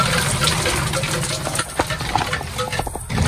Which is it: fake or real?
real